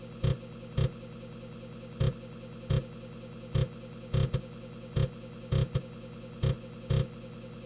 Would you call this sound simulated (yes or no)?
no